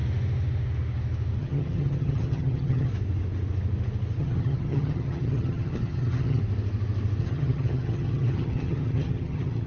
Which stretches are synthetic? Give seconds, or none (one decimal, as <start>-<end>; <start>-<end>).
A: 1.4-2.9; 4.2-6.4; 7.2-9.7